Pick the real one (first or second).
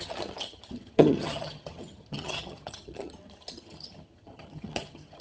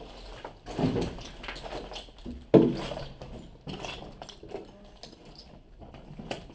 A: second